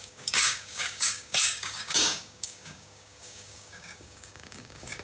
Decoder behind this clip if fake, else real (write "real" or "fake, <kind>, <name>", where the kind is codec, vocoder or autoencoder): fake, codec, DAC